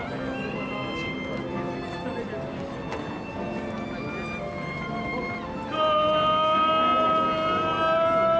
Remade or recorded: recorded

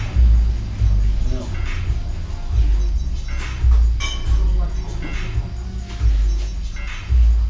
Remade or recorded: recorded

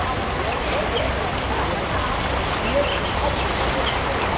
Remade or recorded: recorded